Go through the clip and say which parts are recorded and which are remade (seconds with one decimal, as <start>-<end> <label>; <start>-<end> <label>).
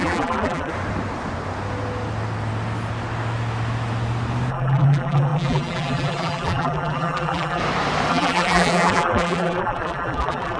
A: 0.0-0.7 remade; 0.7-4.5 recorded; 4.5-7.6 remade; 7.6-8.1 recorded; 8.1-10.6 remade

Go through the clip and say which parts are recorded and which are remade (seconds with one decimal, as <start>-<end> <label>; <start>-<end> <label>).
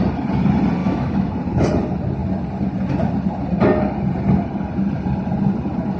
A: 0.0-0.8 recorded; 0.8-1.3 remade; 1.3-6.0 recorded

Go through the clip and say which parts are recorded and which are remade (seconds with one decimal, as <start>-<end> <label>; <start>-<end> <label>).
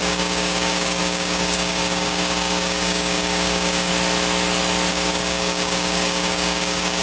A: 0.0-3.9 remade; 3.9-4.9 recorded; 4.9-7.0 remade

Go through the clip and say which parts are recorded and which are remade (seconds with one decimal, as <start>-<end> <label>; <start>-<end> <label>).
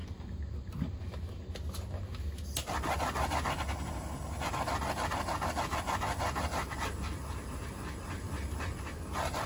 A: 0.0-1.0 remade; 1.0-9.5 recorded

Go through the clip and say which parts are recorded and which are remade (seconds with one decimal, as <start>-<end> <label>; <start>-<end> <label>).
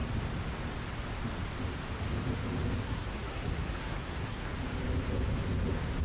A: 0.0-2.8 recorded; 2.8-4.5 remade; 4.5-6.0 recorded